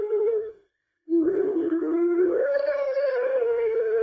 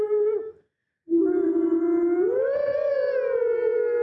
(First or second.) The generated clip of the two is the first